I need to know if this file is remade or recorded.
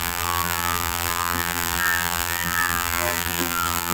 remade